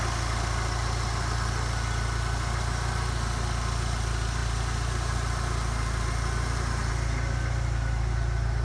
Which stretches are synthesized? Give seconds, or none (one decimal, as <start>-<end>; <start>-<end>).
none